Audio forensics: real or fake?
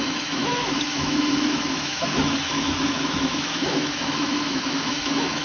fake